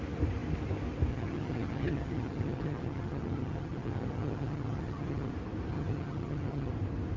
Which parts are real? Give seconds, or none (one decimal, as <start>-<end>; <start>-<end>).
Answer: 0.0-1.1; 5.3-5.7; 6.7-7.2